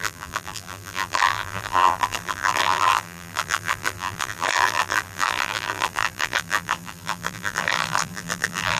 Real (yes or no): no